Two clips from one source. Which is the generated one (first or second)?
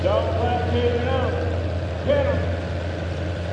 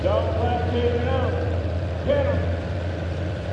second